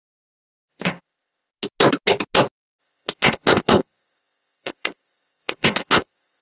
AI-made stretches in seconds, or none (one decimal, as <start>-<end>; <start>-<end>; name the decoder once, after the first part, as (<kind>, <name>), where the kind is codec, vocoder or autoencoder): 0.7-1.5 (codec, ZipCodec); 2.8-6.4